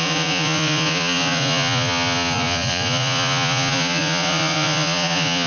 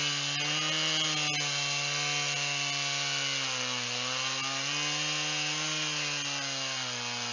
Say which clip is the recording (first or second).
second